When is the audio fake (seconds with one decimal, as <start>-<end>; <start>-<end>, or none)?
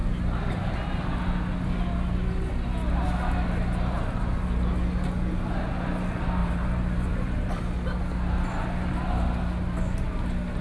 6.4-7.6